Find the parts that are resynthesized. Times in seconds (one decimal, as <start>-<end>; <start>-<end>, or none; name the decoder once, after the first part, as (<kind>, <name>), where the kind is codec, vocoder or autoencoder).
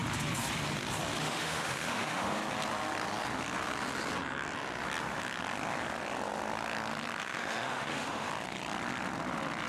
1.2-2.4 (autoencoder, DAC-VAE); 7.2-8.3